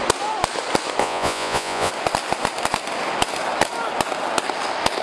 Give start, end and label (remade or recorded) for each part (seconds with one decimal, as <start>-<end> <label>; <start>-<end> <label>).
0.0-1.0 recorded; 1.0-1.9 remade; 1.9-5.0 recorded